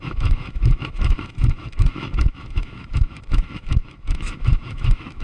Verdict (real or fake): fake